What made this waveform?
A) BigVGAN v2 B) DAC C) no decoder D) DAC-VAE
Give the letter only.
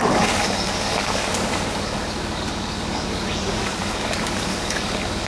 B